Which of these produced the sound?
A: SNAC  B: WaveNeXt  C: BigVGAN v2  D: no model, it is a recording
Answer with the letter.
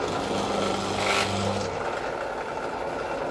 D